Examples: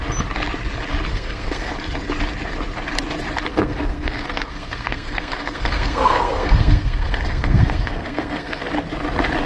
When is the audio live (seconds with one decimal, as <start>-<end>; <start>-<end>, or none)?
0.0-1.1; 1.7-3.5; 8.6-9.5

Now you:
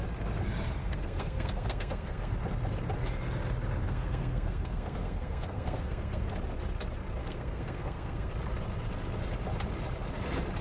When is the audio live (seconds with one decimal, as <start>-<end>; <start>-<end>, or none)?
0.0-0.8; 2.3-3.8; 6.3-7.2; 8.3-10.6

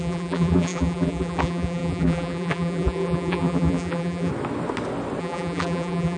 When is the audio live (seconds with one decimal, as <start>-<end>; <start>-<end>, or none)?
4.3-5.2

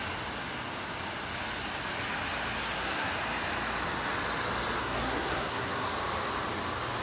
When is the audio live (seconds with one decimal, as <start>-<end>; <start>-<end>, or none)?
0.0-2.6; 3.1-4.8; 5.9-7.0

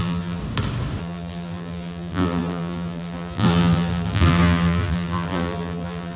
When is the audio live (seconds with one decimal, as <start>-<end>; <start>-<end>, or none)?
0.4-1.0

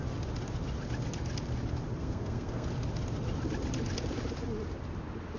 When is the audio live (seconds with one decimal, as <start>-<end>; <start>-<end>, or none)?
0.0-2.0; 2.7-5.4

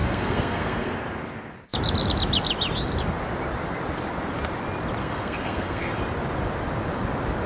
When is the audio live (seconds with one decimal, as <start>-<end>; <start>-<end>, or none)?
0.9-5.0; 6.0-7.5